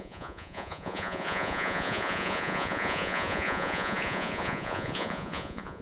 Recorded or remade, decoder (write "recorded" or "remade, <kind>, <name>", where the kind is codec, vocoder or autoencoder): remade, vocoder, Vocos